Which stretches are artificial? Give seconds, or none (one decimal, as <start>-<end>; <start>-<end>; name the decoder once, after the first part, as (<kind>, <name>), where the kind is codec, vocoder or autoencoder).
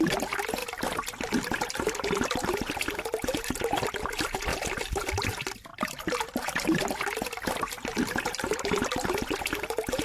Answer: 0.6-2.7 (vocoder, BigVGAN v2); 4.5-5.1; 5.7-8.6